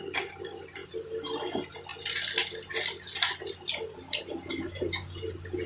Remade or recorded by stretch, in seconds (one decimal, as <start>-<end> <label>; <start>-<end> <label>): 0.0-1.9 recorded; 1.9-4.2 remade; 4.2-5.7 recorded